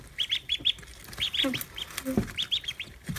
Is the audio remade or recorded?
recorded